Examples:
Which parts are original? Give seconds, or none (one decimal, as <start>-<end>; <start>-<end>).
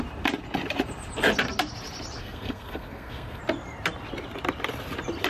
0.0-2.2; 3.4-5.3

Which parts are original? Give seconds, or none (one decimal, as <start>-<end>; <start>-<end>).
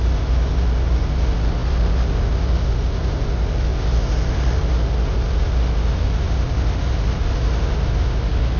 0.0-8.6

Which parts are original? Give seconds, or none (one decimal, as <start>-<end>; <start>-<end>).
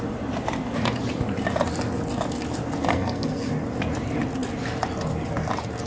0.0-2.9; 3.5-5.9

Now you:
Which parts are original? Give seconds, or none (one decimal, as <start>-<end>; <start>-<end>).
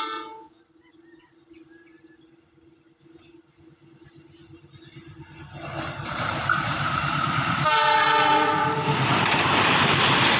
0.0-6.3; 10.0-10.4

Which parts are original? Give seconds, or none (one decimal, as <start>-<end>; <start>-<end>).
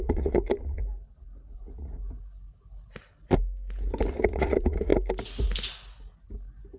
0.8-1.5; 2.0-4.1; 4.9-6.8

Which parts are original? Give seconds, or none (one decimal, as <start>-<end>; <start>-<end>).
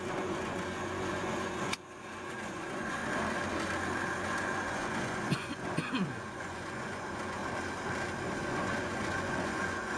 3.0-4.2; 7.4-8.4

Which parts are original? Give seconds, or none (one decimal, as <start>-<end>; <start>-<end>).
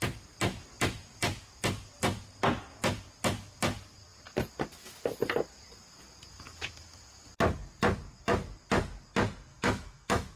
0.0-6.3; 7.0-9.5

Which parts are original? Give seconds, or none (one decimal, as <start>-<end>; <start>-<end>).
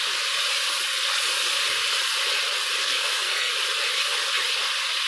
0.0-2.8; 3.5-5.1